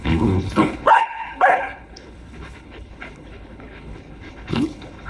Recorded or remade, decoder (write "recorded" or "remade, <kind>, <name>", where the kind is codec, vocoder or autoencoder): remade, codec, HILCodec